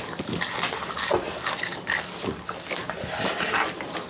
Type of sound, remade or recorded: recorded